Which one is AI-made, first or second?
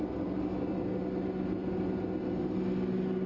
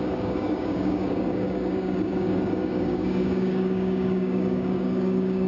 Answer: second